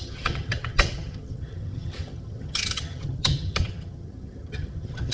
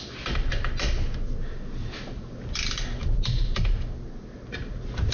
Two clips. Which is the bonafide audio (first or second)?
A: second